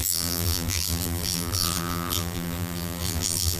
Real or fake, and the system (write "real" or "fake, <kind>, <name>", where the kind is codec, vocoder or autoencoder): fake, vocoder, BigVGAN v2